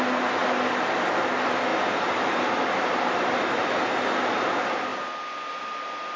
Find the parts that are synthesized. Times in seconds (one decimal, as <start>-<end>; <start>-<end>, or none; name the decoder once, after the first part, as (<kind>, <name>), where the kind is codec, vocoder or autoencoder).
1.7-3.6 (vocoder, BigVGAN v2)